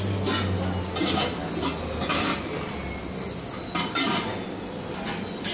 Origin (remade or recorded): recorded